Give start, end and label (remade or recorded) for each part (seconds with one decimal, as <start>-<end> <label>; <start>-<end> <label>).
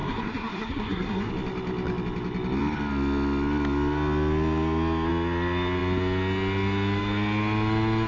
0.0-1.3 remade; 1.3-8.1 recorded